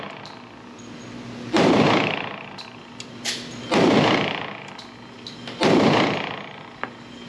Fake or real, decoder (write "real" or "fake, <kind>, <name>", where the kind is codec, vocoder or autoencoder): real